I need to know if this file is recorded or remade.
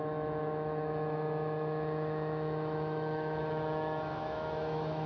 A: remade